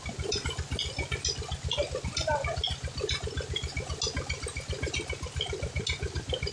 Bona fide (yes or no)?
yes